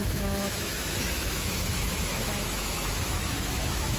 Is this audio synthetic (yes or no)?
yes